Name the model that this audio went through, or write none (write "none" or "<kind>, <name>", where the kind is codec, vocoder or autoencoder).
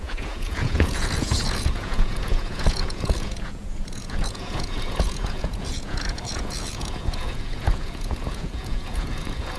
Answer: vocoder, Vocos